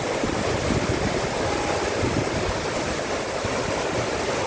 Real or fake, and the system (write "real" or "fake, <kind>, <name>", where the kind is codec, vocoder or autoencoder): real